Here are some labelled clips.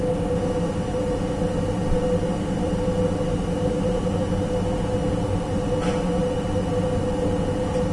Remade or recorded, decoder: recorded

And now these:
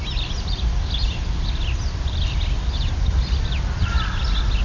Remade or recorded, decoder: recorded